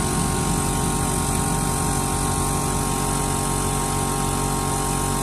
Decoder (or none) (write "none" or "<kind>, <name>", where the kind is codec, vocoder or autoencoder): none